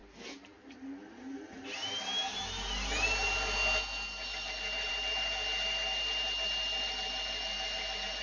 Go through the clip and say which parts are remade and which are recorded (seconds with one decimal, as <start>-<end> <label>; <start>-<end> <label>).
0.0-8.2 recorded